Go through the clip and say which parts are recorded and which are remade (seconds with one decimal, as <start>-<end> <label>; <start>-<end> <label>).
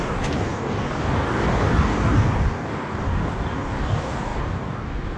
0.0-5.2 remade